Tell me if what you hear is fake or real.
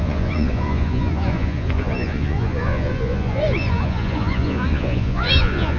fake